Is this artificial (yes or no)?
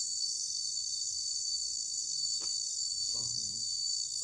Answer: yes